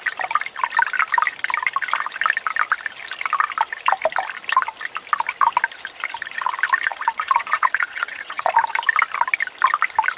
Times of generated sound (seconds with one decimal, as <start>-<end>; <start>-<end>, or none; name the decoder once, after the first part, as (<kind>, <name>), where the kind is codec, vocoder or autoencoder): 6.9-8.5 (vocoder, Vocos)